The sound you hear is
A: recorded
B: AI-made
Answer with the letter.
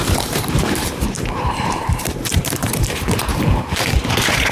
B